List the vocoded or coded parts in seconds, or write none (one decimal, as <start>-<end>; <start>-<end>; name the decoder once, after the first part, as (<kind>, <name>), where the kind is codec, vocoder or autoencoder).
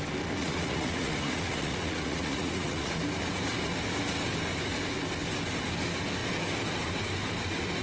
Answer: 0.4-3.0 (vocoder, Vocos)